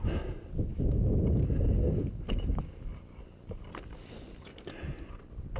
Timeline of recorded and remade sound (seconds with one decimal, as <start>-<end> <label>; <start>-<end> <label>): 0.0-5.6 recorded